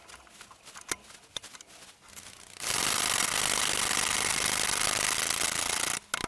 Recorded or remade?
recorded